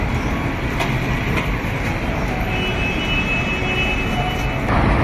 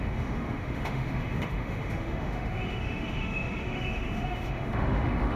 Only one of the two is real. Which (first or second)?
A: first